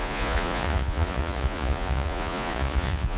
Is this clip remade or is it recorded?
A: remade